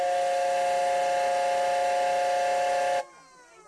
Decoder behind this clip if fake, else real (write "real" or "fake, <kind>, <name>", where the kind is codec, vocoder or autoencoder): real